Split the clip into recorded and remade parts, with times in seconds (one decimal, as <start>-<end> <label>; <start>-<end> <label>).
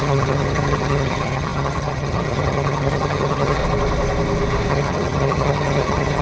0.0-3.6 remade; 3.6-4.7 recorded; 4.7-6.2 remade